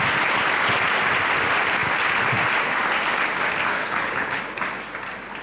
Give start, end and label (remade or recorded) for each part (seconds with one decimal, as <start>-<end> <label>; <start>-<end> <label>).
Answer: 0.0-3.8 recorded; 3.8-4.4 remade; 4.4-5.4 recorded